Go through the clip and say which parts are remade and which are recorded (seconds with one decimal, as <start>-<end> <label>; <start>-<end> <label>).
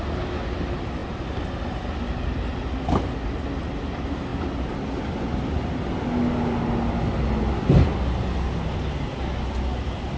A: 0.0-10.2 recorded